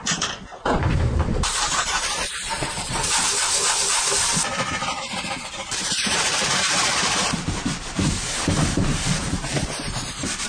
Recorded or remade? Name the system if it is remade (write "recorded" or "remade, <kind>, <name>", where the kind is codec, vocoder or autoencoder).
remade, vocoder, BigVGAN v2